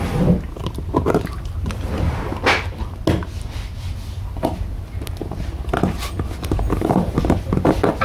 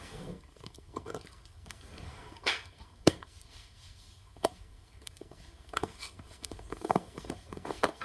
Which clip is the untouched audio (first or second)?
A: first